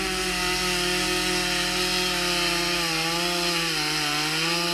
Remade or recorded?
recorded